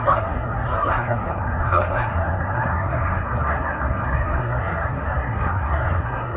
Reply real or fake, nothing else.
fake